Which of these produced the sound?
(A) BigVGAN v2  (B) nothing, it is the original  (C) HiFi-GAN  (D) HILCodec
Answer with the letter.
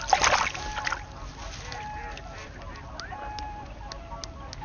B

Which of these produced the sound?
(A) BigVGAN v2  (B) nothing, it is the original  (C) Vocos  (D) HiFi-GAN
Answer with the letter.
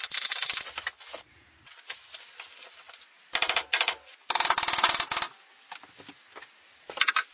B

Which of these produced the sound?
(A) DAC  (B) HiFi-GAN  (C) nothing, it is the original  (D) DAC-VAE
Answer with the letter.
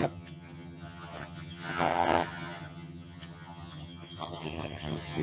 B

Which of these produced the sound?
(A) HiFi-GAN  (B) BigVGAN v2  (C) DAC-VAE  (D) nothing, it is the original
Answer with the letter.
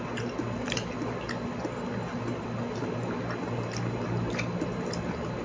D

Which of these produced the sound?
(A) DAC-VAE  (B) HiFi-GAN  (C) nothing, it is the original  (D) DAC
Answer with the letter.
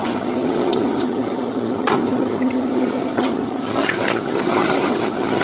B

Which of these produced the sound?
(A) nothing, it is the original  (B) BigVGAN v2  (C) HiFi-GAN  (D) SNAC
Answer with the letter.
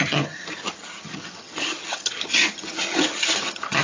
C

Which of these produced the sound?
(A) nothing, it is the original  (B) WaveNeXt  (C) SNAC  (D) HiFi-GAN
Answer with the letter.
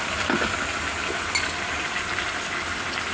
A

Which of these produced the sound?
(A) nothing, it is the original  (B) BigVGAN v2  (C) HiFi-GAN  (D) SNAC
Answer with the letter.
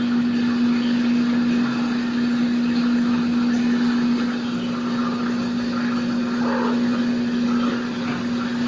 A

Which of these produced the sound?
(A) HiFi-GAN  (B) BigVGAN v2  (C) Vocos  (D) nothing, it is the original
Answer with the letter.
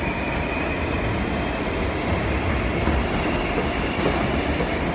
D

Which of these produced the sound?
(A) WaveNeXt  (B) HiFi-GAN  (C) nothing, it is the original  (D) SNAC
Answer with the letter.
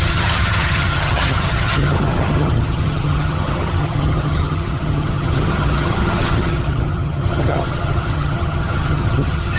B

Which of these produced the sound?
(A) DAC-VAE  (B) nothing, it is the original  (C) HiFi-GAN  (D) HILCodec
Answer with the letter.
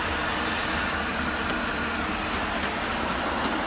B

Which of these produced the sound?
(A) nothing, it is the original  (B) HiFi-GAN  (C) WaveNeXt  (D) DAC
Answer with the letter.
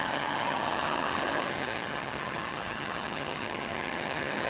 B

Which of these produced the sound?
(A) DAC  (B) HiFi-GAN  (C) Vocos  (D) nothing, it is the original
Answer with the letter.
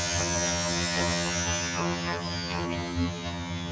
B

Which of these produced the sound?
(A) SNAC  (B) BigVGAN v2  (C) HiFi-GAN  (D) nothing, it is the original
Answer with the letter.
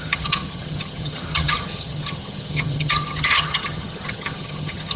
C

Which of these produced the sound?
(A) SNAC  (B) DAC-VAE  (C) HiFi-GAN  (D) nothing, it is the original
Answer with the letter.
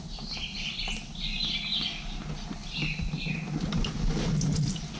D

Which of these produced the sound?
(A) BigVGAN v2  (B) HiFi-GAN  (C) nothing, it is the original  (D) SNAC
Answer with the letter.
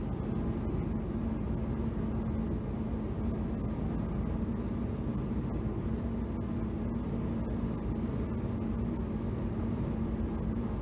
C